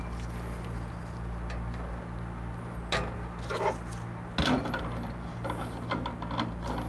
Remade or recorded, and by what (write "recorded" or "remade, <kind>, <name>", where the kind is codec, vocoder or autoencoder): recorded